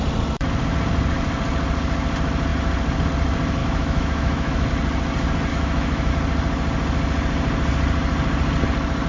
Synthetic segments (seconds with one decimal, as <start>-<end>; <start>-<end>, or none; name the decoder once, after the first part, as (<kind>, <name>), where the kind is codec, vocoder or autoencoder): 3.6-4.7 (autoencoder, DAC-VAE); 5.5-6.1